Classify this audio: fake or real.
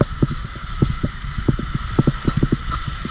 real